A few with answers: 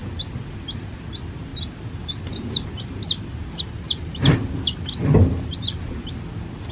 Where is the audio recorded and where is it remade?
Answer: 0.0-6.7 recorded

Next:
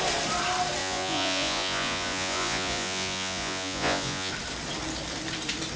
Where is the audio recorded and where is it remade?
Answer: 0.0-0.8 recorded; 0.8-4.3 remade; 4.3-5.8 recorded

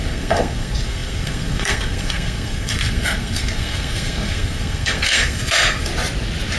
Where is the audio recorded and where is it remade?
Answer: 0.0-5.9 remade; 5.9-6.6 recorded

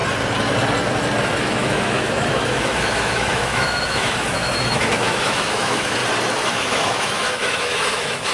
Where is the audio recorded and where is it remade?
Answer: 0.0-1.4 recorded; 1.4-6.0 remade; 6.0-6.5 recorded; 6.5-8.3 remade